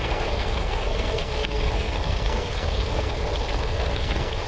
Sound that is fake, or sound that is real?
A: fake